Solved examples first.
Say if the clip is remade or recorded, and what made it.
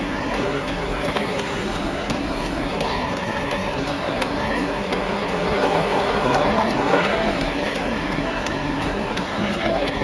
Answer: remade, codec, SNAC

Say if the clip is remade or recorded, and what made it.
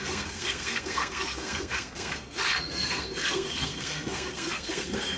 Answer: remade, codec, SNAC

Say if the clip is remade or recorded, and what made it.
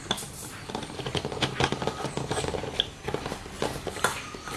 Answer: recorded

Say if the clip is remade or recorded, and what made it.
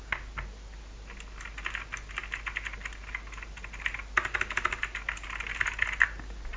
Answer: recorded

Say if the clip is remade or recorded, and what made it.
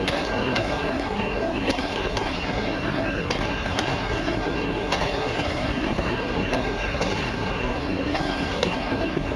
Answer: remade, codec, SNAC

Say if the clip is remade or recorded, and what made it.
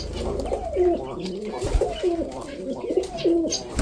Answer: recorded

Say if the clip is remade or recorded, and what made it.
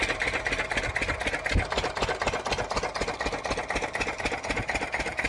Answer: recorded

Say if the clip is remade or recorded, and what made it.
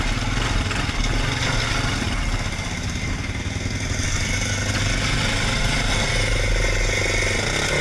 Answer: recorded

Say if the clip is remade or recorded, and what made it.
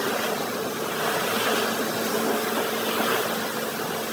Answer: recorded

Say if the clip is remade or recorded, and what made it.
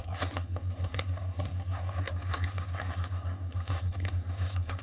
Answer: remade, codec, SNAC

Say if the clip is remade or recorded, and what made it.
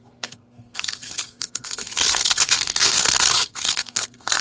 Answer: remade, codec, SNAC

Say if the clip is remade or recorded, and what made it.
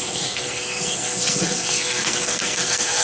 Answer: remade, codec, SNAC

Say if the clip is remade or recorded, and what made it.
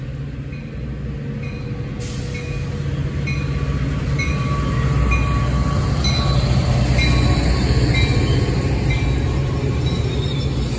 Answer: recorded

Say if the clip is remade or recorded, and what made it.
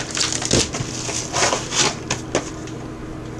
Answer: recorded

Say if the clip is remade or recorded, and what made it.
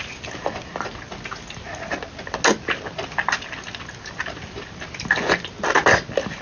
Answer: recorded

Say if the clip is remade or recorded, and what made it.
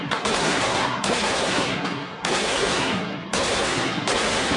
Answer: remade, codec, SNAC